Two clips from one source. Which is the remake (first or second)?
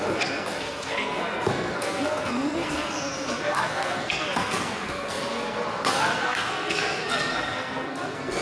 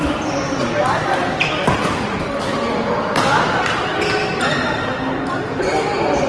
first